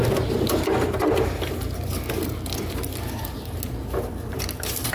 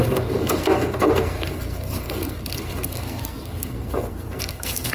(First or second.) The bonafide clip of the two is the first